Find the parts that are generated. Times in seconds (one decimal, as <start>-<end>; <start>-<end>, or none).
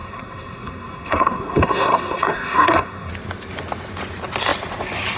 0.0-3.1